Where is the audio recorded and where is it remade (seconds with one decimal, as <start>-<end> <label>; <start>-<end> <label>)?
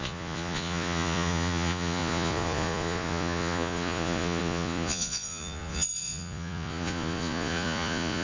0.0-8.2 remade